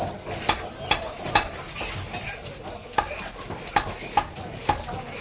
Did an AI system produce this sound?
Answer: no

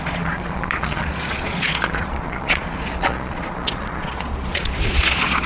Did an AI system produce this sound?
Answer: yes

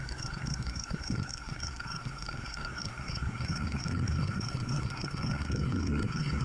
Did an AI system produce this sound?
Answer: yes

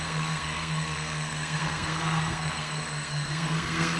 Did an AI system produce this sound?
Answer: yes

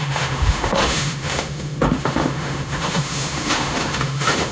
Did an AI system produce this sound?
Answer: yes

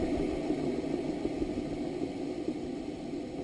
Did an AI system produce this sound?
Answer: no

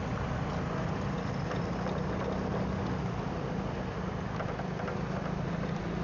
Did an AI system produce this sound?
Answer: no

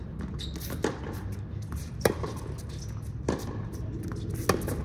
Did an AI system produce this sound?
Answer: no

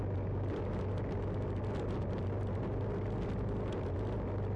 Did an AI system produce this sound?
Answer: no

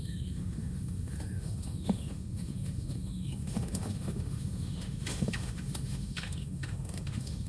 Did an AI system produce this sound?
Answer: yes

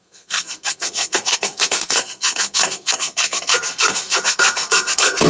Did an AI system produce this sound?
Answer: yes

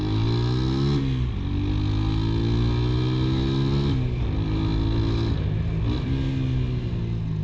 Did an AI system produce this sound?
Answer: no